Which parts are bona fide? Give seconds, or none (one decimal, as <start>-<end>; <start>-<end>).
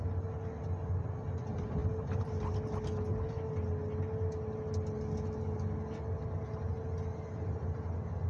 0.0-8.3